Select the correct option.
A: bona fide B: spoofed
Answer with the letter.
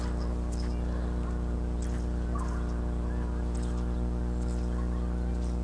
A